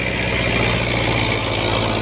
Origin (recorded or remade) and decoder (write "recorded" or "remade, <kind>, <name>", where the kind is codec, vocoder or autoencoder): recorded